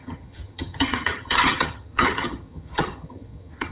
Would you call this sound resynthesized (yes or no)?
yes